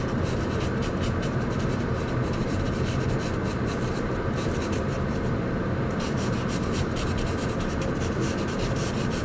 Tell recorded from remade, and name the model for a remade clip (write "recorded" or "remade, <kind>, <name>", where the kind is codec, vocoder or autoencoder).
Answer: remade, vocoder, BigVGAN v2